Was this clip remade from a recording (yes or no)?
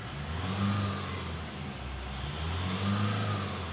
no